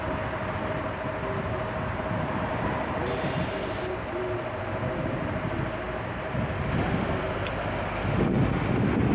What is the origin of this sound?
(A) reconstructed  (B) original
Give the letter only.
B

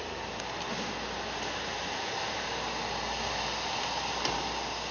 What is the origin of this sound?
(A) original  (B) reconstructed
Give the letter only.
A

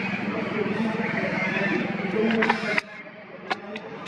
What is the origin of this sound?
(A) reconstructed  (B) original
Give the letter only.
A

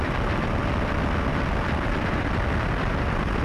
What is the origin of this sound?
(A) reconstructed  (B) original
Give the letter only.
A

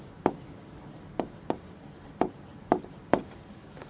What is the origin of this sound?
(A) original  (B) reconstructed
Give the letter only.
B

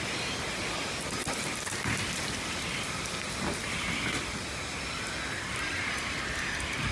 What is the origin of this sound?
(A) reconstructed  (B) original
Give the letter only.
B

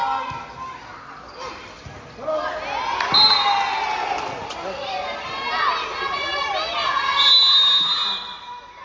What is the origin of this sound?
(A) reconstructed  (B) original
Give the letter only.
B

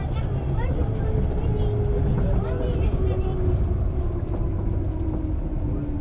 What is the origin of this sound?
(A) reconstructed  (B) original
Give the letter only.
B